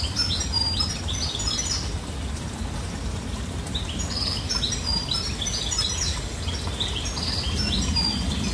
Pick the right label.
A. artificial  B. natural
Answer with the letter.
B